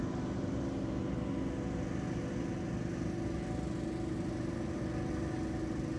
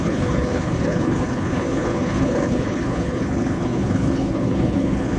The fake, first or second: second